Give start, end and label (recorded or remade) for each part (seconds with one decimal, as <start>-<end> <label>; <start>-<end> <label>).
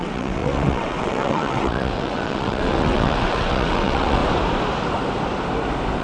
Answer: 0.0-4.2 remade; 4.2-6.0 recorded